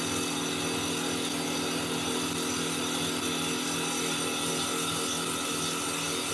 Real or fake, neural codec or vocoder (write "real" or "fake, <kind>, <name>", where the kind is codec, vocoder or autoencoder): real